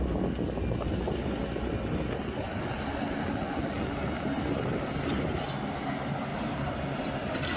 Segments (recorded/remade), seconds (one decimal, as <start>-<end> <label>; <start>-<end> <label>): 0.0-6.3 recorded; 6.3-7.6 remade